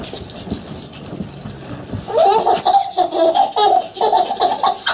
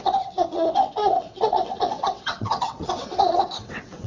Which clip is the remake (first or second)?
second